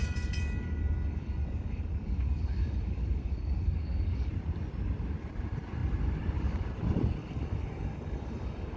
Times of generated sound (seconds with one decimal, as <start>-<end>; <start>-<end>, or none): 0.0-4.3; 7.2-8.8